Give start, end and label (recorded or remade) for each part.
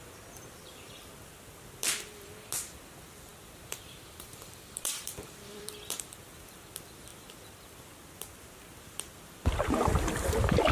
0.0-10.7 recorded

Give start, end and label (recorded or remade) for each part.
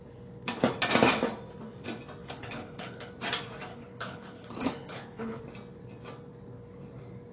0.0-2.2 recorded; 2.2-3.1 remade; 3.1-3.7 recorded; 3.7-5.4 remade; 5.4-7.3 recorded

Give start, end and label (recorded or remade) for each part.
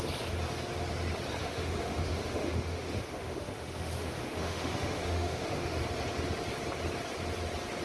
0.0-1.4 recorded; 1.4-5.8 remade; 5.8-7.8 recorded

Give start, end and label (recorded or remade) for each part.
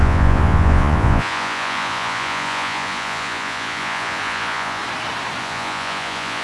0.0-4.8 remade; 4.8-5.4 recorded; 5.4-6.4 remade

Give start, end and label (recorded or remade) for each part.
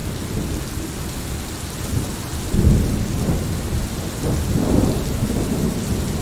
0.0-6.2 recorded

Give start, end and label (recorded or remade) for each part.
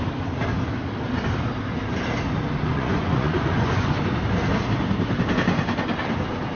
0.0-2.7 recorded; 2.7-4.0 remade; 4.0-6.6 recorded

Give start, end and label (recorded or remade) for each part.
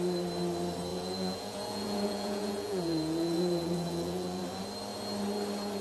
0.0-0.9 recorded; 0.9-4.4 remade; 4.4-5.8 recorded